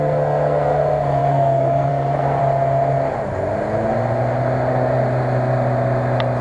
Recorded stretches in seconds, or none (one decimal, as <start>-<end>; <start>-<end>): 2.4-6.4

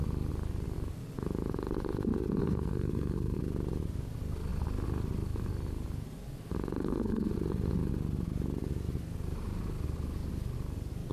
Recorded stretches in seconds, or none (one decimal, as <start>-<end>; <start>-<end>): 0.0-2.4; 3.4-6.8; 7.3-11.1

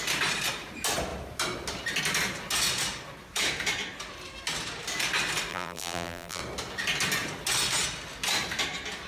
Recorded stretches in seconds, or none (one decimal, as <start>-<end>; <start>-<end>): 0.0-5.5; 6.4-9.1

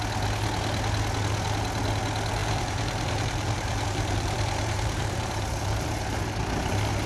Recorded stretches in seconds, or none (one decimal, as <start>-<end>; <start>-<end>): 0.0-2.4; 6.0-7.1

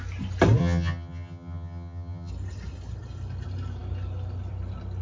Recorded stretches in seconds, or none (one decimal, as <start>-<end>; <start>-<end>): 0.0-0.6; 2.3-5.0

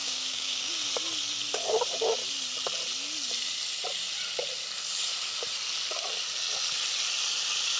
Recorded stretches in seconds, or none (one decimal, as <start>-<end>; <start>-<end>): 0.7-7.8